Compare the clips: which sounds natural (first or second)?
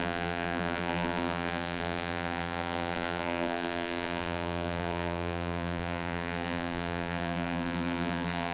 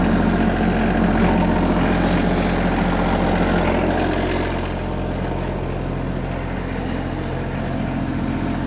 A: second